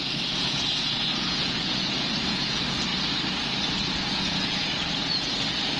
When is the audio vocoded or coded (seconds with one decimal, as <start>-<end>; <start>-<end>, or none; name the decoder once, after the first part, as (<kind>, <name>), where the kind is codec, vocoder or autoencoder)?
0.0-2.9 (vocoder, Vocos); 4.1-5.8